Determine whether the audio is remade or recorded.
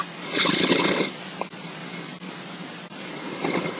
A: remade